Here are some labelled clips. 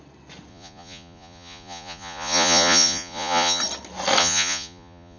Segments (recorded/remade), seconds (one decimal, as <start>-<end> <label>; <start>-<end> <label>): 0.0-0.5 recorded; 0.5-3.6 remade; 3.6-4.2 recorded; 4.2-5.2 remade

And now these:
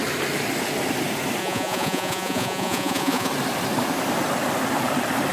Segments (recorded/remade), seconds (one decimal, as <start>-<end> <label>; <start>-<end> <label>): 0.0-1.4 recorded; 1.4-3.3 remade; 3.3-5.3 recorded

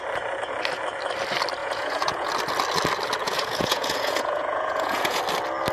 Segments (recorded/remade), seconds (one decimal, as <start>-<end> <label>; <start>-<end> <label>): 0.0-1.6 recorded; 1.6-2.3 remade; 2.3-3.2 recorded; 3.2-5.2 remade; 5.2-5.7 recorded